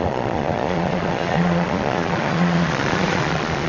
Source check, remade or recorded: remade